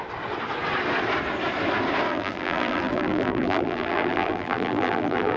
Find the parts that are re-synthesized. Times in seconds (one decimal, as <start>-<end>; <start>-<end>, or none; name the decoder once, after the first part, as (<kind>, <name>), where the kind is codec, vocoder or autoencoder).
2.1-5.4 (vocoder, BigVGAN v2)